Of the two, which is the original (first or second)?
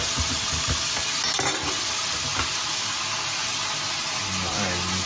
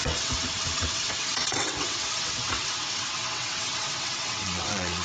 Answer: first